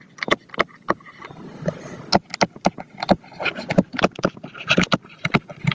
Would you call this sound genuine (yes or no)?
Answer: yes